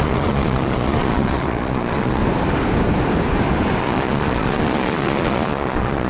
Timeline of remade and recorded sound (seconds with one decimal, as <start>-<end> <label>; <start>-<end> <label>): 0.0-2.2 remade; 2.2-3.8 recorded; 3.8-6.1 remade